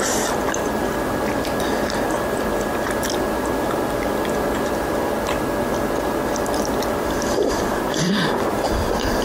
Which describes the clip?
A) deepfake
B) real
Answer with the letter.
A